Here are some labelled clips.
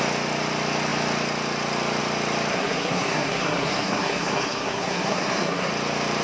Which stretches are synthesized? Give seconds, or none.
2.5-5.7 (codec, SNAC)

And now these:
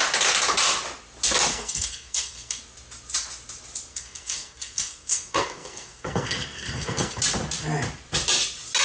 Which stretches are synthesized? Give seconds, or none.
1.5-2.6 (codec, SNAC); 3.9-7.2

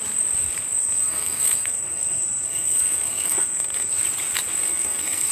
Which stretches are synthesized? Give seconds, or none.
0.8-4.0 (codec, SNAC); 4.7-5.3

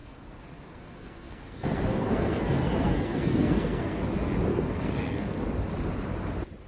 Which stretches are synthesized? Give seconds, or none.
0.0-4.0 (codec, SNAC); 4.5-5.4

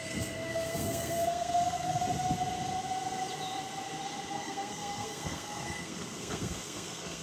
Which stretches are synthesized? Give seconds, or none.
0.0-2.0 (codec, SNAC); 4.3-7.2

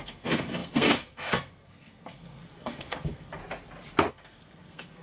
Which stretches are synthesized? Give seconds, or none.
0.0-3.4 (codec, SNAC); 4.1-5.0